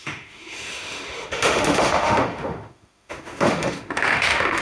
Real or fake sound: fake